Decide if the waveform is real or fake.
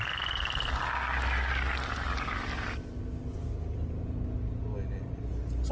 real